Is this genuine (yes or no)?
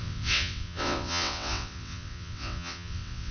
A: no